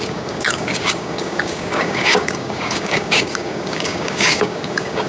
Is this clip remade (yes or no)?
yes